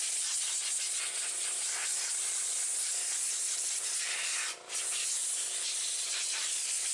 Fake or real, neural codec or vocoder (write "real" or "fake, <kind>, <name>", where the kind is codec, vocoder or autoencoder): real